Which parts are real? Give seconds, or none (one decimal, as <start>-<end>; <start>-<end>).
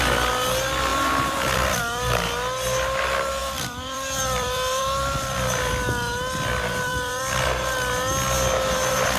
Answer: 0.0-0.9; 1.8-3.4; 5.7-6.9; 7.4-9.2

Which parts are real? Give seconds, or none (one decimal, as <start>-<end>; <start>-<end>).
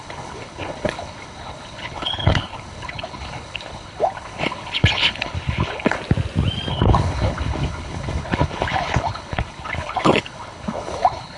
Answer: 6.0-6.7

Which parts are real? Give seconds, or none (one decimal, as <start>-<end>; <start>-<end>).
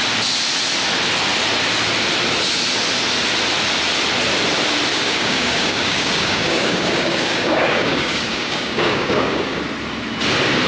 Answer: 0.0-4.9; 9.6-10.7